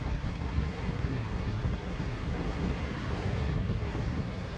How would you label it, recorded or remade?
remade